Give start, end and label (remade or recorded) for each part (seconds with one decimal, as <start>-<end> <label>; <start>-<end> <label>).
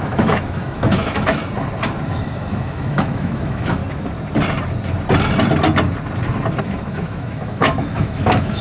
0.0-1.4 remade; 1.4-2.0 recorded; 2.0-3.8 remade; 3.8-6.6 recorded; 6.6-8.6 remade